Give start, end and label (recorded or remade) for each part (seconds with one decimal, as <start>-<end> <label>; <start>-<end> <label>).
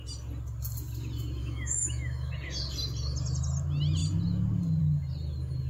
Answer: 0.0-1.4 recorded; 1.4-2.3 remade; 2.3-5.7 recorded